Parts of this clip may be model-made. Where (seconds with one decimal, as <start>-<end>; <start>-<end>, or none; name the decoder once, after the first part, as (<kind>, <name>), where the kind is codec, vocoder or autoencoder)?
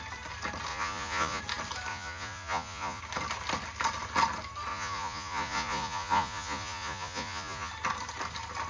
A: 0.7-1.4 (vocoder, Vocos); 1.9-3.0; 4.7-7.7